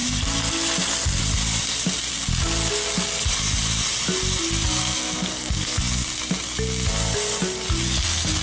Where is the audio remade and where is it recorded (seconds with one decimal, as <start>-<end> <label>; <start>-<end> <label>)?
0.0-4.8 recorded; 4.8-5.8 remade; 5.8-8.4 recorded